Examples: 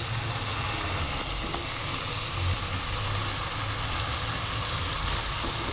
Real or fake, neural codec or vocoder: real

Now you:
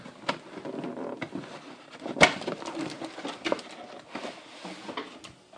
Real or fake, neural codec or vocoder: real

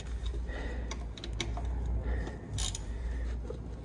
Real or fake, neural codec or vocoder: real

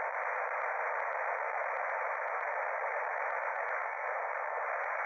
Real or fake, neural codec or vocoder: fake, vocoder, Vocos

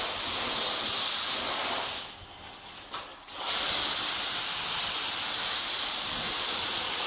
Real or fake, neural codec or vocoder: real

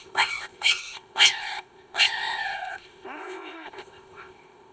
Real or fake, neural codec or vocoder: fake, codec, ZipCodec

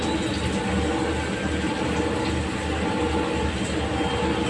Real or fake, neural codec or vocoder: real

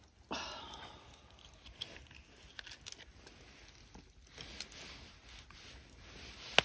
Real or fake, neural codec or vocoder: real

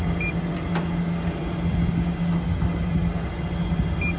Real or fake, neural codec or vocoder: real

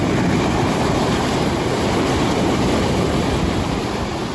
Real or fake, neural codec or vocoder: fake, vocoder, BigVGAN v2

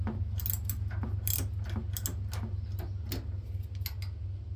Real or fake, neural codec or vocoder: real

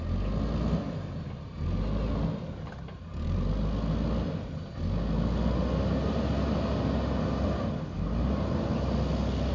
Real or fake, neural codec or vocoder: real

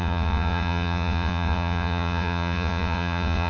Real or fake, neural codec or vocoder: fake, vocoder, Vocos